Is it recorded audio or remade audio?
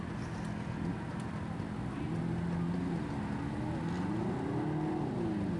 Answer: recorded